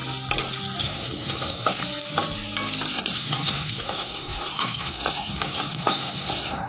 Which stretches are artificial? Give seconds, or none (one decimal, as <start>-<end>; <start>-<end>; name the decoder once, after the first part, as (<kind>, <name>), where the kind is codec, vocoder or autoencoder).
0.8-1.8 (codec, SNAC); 2.9-6.7